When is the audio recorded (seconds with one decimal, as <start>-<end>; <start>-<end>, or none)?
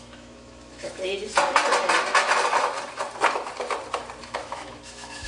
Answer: 1.0-4.2